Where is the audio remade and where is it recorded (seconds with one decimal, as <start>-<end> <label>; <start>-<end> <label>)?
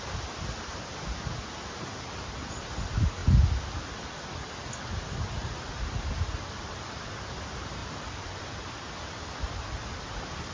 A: 0.0-7.8 recorded; 7.8-8.4 remade; 8.4-10.5 recorded